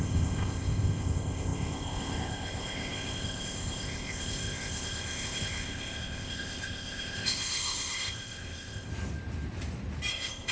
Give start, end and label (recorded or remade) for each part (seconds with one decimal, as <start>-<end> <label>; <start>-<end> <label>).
0.0-8.9 remade; 8.9-10.1 recorded; 10.1-10.5 remade